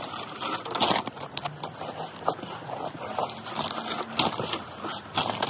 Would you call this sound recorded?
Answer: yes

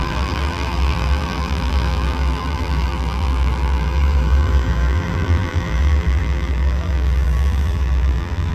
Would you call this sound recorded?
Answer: no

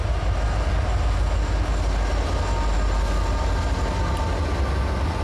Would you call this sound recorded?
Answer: yes